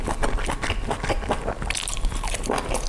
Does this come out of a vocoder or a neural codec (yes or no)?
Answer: no